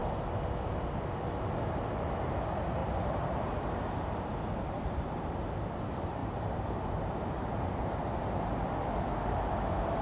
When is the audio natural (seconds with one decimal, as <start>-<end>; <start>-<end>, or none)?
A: 0.0-2.8; 4.3-6.2; 8.1-10.0